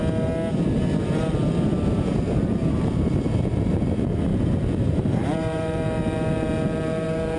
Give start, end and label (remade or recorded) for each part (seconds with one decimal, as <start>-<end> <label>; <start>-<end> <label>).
0.0-1.9 recorded; 1.9-7.4 remade